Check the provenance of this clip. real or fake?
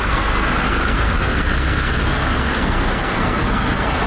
fake